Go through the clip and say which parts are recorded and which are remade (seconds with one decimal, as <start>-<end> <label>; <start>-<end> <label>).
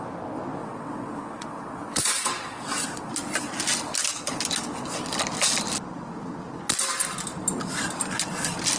0.0-0.6 recorded; 0.6-3.1 remade; 3.1-8.8 recorded